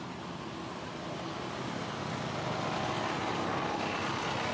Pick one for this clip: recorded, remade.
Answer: recorded